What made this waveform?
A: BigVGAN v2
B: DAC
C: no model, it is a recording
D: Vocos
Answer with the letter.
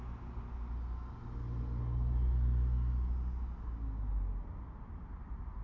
C